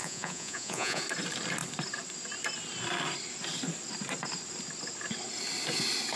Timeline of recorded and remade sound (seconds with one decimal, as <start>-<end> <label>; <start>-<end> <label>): 0.0-1.0 remade; 1.0-6.2 recorded